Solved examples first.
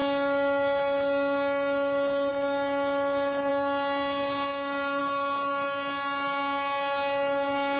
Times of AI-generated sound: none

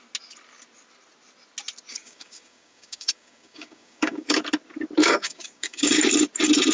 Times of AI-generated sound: 1.9-4.4 (codec, DAC); 5.0-6.0

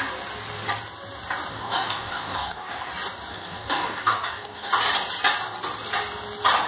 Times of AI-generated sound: 1.5-2.9 (codec, DAC); 3.3-4.7

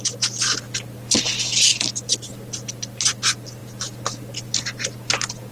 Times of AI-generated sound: none

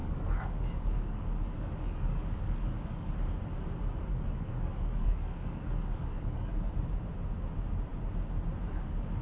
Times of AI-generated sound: 0.0-3.1 (codec, DAC); 4.1-6.7

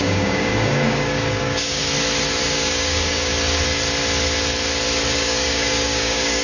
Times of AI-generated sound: 0.0-1.8 (codec, DAC); 2.4-3.3; 5.1-6.4